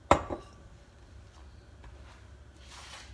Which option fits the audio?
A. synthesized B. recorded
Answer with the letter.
B